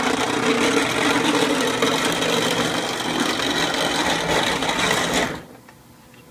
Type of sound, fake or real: real